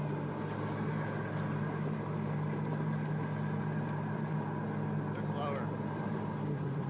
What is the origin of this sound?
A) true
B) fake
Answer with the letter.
A